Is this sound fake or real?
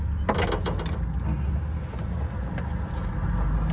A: real